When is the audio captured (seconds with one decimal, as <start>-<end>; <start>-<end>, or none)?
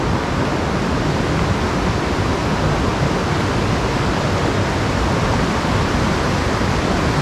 0.0-7.2